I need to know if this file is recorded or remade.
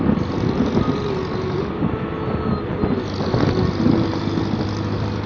recorded